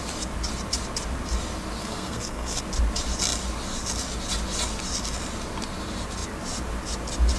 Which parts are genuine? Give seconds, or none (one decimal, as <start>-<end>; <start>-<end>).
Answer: 0.0-1.8; 2.6-7.4